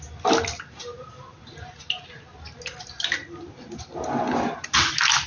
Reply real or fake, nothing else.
real